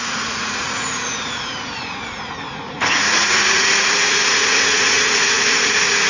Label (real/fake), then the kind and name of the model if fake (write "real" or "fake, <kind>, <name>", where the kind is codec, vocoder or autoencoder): fake, vocoder, Vocos